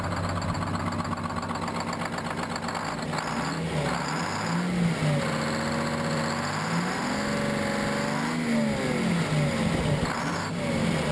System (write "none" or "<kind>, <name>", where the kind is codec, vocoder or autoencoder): none